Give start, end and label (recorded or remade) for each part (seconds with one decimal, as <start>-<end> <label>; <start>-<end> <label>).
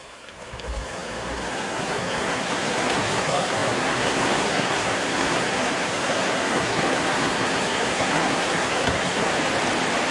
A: 0.0-9.3 remade; 9.3-10.1 recorded